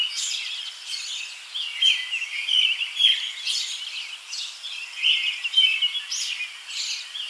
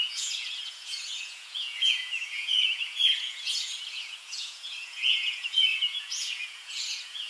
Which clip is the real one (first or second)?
first